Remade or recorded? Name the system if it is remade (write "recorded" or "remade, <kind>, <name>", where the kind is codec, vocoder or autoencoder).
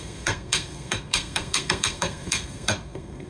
remade, codec, SNAC